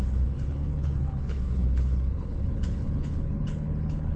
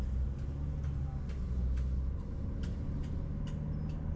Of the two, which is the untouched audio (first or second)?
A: second